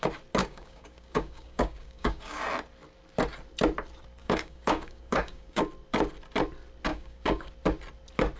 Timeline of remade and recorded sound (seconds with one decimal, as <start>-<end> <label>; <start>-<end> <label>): 0.0-0.4 recorded; 0.4-2.4 remade; 2.4-4.2 recorded; 4.2-5.6 remade; 5.6-6.9 recorded; 6.9-7.5 remade; 7.5-8.4 recorded

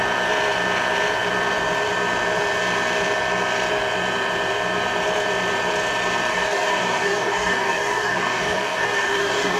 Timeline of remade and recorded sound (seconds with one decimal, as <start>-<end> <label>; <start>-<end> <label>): 0.0-6.3 recorded; 6.3-9.6 remade

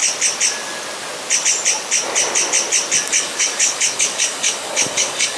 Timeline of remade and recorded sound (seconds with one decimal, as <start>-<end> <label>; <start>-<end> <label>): 0.0-3.0 recorded; 3.0-5.4 remade